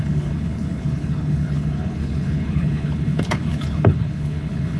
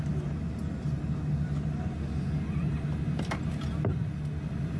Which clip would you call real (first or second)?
second